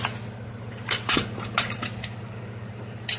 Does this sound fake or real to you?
fake